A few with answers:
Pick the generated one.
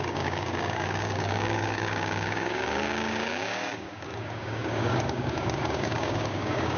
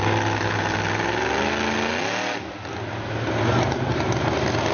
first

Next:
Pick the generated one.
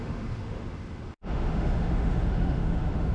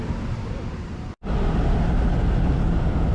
first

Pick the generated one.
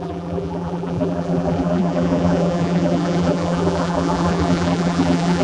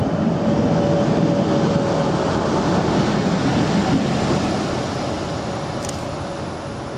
first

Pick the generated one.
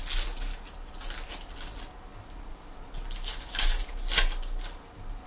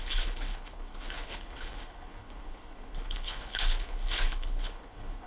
second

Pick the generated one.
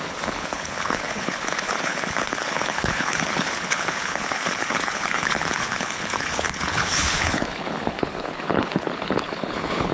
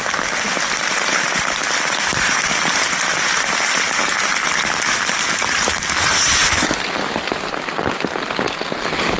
first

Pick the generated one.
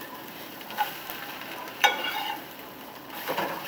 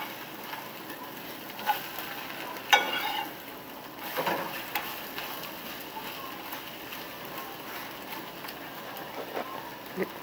first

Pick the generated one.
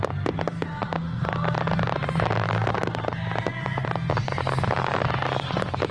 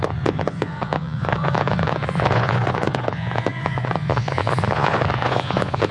second